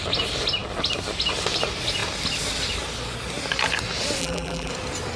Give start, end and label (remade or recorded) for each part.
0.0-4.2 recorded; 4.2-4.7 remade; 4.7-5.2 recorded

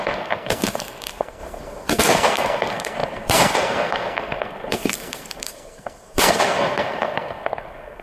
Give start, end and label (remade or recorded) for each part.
0.0-8.0 remade

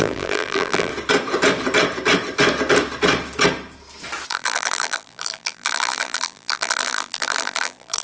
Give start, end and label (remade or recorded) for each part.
0.0-0.9 remade; 0.9-4.3 recorded; 4.3-8.0 remade